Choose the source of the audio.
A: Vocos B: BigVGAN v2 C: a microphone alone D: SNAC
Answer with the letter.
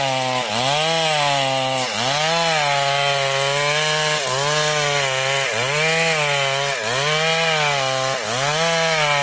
C